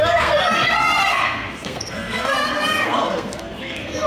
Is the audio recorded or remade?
remade